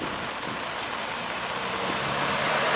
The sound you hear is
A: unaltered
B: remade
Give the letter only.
B